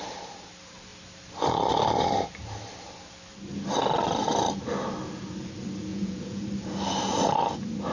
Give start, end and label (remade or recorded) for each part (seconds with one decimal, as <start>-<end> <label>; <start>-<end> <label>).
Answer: 0.0-5.9 recorded; 5.9-6.4 remade; 6.4-7.9 recorded